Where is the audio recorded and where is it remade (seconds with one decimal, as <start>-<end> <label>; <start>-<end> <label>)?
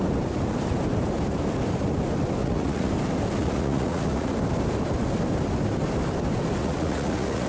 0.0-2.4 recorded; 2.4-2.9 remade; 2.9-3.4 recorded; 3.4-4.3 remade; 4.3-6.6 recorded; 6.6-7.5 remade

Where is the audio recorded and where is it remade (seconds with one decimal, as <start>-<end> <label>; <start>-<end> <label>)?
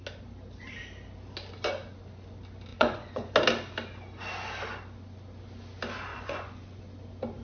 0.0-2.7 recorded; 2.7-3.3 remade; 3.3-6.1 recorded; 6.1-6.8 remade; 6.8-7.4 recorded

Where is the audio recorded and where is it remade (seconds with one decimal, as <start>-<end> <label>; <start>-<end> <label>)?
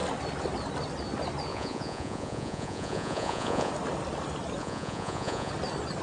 0.0-1.5 recorded; 1.5-3.7 remade; 3.7-4.6 recorded; 4.6-5.5 remade; 5.5-6.0 recorded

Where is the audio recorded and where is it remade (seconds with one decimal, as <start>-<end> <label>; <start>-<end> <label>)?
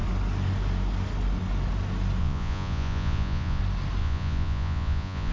0.0-2.2 recorded; 2.2-3.6 remade; 3.6-4.0 recorded; 4.0-5.3 remade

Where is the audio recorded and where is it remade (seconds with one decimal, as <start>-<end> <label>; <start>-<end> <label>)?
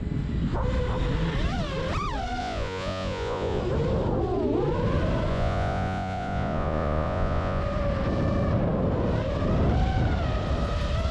0.0-2.4 recorded; 2.4-3.6 remade; 3.6-5.3 recorded; 5.3-7.6 remade; 7.6-11.1 recorded